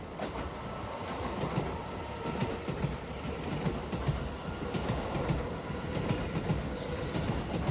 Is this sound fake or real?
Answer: real